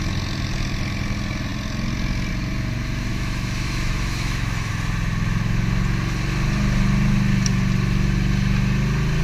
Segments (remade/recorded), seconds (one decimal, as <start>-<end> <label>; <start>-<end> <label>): 0.0-3.1 recorded; 3.1-4.7 remade; 4.7-9.2 recorded